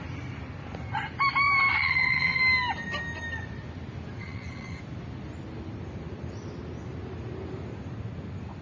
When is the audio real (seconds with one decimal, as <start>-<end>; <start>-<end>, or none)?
0.0-1.8; 2.4-4.2; 4.8-8.6